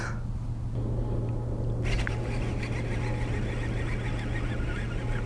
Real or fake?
real